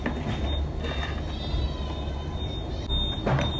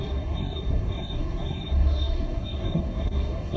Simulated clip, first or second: second